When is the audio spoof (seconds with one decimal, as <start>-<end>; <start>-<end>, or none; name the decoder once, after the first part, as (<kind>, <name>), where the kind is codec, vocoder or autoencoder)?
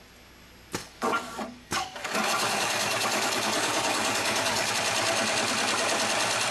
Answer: 0.8-4.7 (codec, DAC)